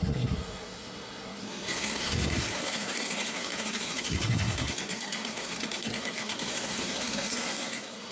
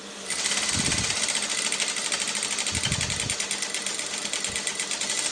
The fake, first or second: first